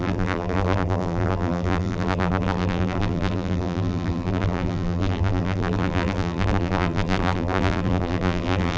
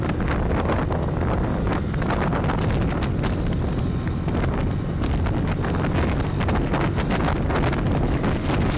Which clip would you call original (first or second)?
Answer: second